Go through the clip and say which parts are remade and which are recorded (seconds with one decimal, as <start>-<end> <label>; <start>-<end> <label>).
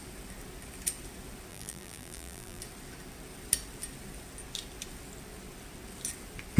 0.0-1.5 recorded; 1.5-2.6 remade; 2.6-6.6 recorded